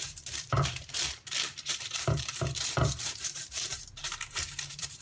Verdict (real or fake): fake